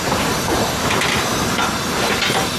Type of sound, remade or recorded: recorded